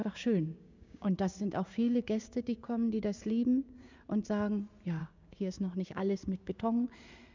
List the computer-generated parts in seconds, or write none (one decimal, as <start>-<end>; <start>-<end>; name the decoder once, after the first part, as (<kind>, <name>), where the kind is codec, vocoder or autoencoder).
0.0-3.9 (codec, DAC); 5.0-6.6